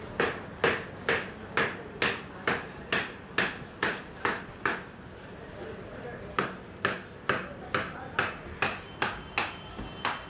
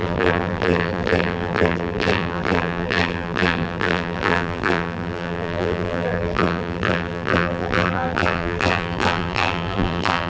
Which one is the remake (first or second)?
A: second